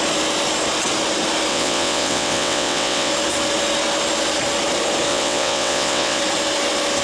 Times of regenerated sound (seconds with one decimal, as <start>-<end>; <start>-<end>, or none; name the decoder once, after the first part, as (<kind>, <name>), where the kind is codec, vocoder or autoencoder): 1.5-3.1 (vocoder, WaveNeXt); 5.1-6.2